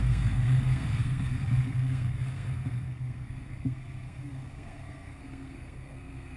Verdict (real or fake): fake